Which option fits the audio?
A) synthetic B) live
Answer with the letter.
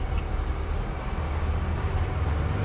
B